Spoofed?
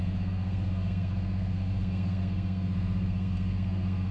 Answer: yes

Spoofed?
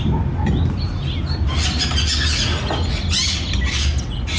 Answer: no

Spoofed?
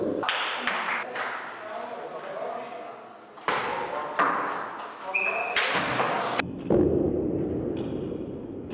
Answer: no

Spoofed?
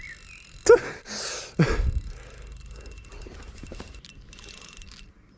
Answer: no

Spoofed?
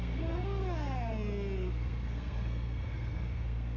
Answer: yes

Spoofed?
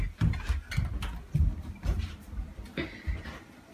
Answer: no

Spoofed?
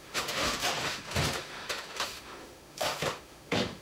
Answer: yes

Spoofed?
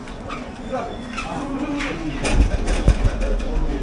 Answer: yes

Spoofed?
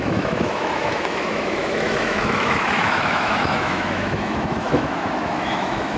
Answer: yes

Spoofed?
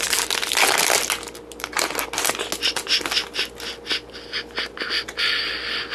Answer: no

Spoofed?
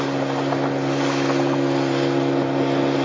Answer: no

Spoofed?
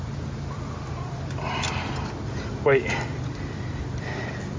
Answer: no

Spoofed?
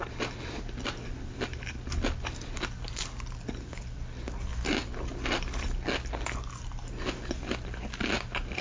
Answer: no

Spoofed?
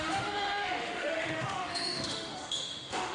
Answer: yes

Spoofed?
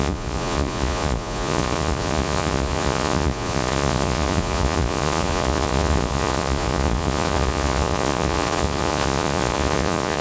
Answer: yes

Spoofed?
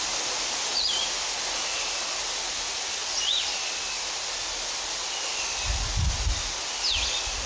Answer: no